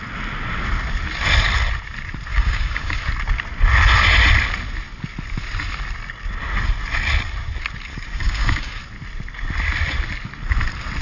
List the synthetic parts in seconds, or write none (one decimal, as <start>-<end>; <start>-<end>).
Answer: 2.3-3.0; 7.9-8.8